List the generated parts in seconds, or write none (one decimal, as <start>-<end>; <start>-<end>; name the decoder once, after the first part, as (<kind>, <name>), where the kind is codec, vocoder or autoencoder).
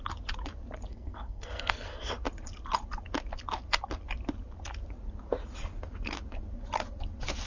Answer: 0.9-2.1 (codec, SNAC)